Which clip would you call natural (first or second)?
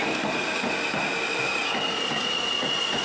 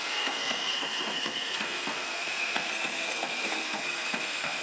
first